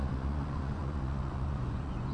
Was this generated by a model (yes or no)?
yes